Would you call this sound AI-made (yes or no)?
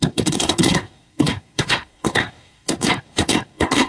yes